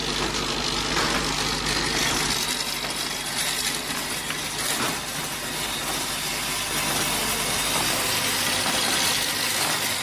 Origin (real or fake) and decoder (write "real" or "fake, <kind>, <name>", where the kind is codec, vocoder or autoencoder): real